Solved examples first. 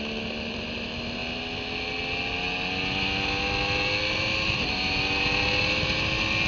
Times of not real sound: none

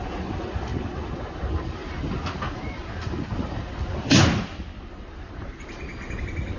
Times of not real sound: none

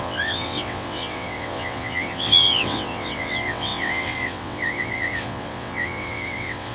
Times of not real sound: 0.0-6.7 (vocoder, WaveNeXt)

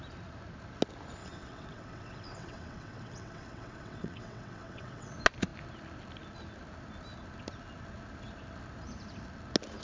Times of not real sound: 1.2-5.1 (vocoder, WaveNeXt)

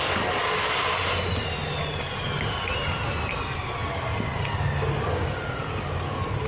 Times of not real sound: none